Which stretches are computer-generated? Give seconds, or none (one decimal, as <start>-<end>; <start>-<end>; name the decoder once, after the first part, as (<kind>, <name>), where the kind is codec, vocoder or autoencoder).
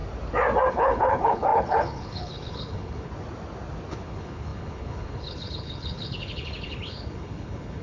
0.7-3.1 (codec, HILCodec); 3.9-7.8